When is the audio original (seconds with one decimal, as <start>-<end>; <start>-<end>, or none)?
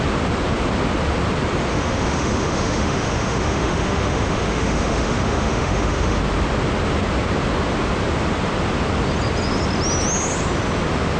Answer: 0.0-1.7; 6.2-11.2